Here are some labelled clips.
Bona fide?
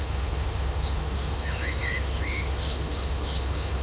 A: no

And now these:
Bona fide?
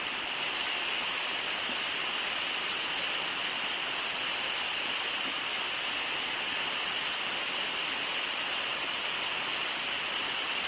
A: yes